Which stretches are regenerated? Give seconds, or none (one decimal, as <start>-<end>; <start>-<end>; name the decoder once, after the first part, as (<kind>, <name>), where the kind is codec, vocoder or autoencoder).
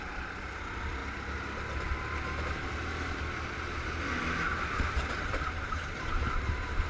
0.0-1.0 (vocoder, BigVGAN v2); 5.1-6.9